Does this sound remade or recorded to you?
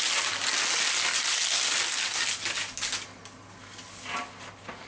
recorded